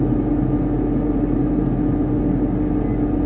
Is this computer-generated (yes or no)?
no